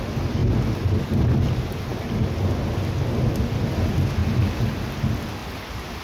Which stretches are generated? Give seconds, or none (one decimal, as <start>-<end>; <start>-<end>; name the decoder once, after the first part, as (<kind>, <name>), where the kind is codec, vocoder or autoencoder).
none